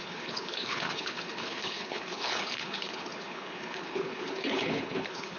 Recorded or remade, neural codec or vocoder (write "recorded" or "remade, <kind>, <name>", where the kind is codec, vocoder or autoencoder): remade, codec, HILCodec